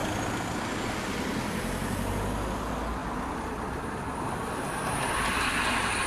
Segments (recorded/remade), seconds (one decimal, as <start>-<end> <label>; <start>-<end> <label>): 0.0-6.1 recorded